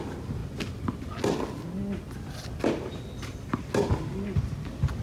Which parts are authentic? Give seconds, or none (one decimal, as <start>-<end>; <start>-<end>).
0.0-5.0